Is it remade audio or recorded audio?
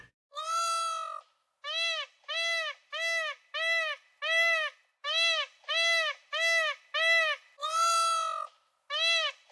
recorded